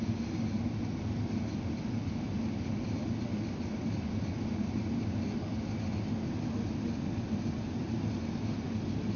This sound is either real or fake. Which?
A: real